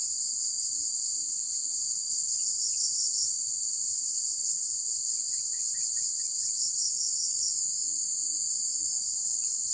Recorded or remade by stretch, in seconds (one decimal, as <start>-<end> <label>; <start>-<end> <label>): 0.0-6.8 remade; 6.8-9.0 recorded; 9.0-9.7 remade